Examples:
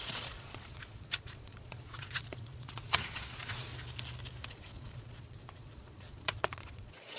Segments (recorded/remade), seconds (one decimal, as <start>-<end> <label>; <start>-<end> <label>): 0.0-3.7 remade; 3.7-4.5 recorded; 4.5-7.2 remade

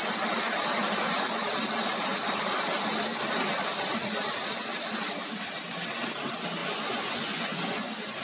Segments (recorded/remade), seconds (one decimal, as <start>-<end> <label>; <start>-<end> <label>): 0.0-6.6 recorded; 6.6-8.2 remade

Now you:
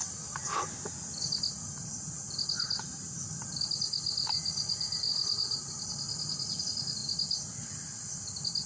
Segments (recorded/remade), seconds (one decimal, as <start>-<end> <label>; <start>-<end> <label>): 0.0-8.7 recorded

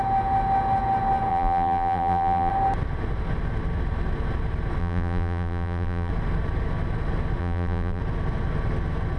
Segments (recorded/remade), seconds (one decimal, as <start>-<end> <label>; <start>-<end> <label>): 0.0-1.3 recorded; 1.3-2.5 remade; 2.5-4.8 recorded; 4.8-6.1 remade; 6.1-7.4 recorded; 7.4-8.0 remade; 8.0-9.2 recorded

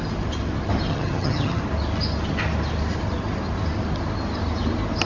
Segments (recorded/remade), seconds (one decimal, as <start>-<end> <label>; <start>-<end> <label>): 0.0-0.9 recorded; 0.9-1.6 remade; 1.6-5.1 recorded

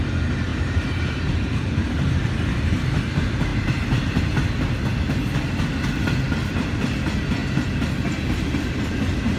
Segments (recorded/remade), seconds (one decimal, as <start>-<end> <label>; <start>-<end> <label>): 0.0-0.5 recorded; 0.5-3.0 remade; 3.0-3.5 recorded; 3.5-4.2 remade; 4.2-9.4 recorded

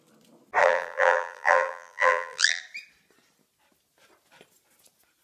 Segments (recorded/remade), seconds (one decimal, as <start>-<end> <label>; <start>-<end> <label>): 0.0-0.6 recorded; 0.6-2.6 remade; 2.6-5.2 recorded